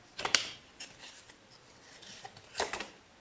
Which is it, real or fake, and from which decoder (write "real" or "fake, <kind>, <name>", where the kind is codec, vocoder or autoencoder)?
fake, vocoder, BigVGAN v2